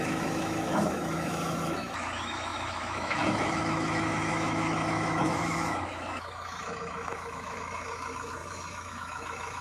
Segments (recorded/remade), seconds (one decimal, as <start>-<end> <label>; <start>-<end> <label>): 0.0-9.6 remade